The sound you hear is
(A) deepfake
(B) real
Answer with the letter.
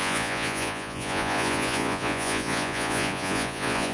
A